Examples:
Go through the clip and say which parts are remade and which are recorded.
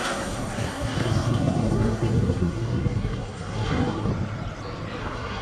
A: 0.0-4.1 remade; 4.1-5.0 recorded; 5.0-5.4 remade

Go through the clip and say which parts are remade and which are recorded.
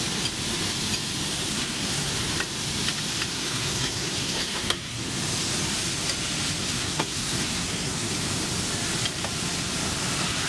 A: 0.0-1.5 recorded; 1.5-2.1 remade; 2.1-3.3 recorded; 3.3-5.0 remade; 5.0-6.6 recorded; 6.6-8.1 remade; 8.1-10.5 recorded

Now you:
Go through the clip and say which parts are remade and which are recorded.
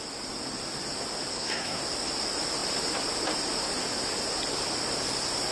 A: 0.0-1.3 recorded; 1.3-1.8 remade; 1.8-5.5 recorded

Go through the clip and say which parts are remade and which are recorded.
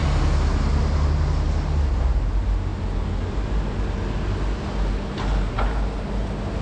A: 0.0-6.6 recorded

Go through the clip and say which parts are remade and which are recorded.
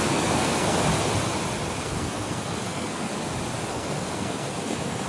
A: 0.0-0.9 remade; 0.9-1.8 recorded; 1.8-3.1 remade; 3.1-3.7 recorded; 3.7-5.1 remade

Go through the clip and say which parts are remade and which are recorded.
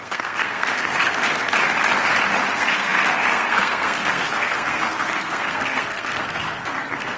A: 0.0-1.4 remade; 1.4-2.5 recorded; 2.5-7.2 remade